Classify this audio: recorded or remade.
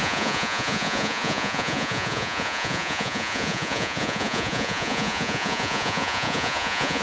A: remade